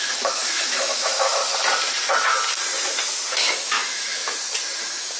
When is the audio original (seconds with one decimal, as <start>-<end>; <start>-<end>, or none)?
1.4-3.3; 4.2-4.8